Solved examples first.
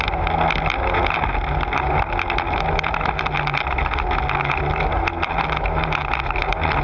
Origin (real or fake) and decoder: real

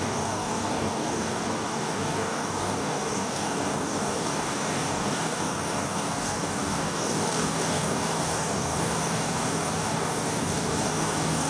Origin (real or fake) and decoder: fake, codec, DAC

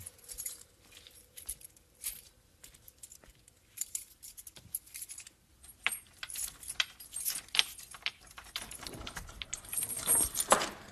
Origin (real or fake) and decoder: fake, vocoder, BigVGAN v2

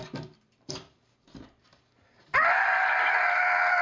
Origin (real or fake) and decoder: real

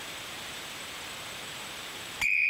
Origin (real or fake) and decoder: fake, vocoder, BigVGAN v2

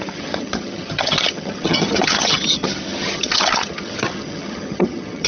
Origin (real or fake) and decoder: fake, vocoder, HiFi-GAN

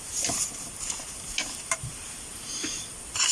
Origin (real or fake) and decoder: fake, vocoder, BigVGAN v2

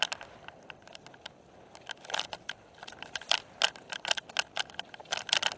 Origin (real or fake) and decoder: real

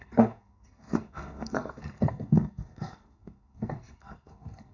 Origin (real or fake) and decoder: fake, codec, SNAC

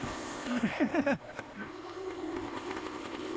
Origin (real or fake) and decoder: fake, codec, ZipCodec